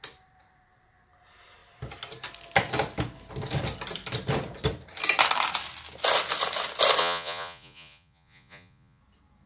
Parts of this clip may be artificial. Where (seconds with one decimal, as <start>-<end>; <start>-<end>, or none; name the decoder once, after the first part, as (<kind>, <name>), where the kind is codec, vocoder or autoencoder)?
7.0-9.0 (vocoder, Vocos)